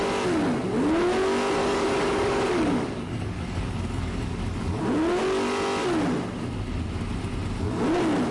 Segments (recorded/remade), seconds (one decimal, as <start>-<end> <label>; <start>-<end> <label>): 0.0-1.6 recorded; 1.6-4.8 remade; 4.8-8.3 recorded